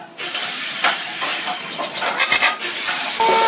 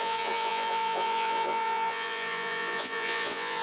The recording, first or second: first